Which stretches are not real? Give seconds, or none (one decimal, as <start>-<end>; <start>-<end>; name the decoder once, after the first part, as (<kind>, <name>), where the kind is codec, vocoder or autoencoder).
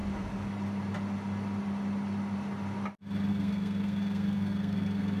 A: 3.3-5.2 (codec, SNAC)